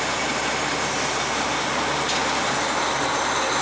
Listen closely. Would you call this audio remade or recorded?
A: recorded